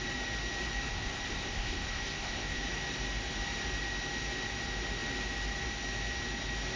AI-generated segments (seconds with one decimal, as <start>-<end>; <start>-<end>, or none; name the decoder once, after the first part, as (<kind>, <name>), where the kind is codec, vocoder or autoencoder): 0.9-2.6 (codec, ZipCodec)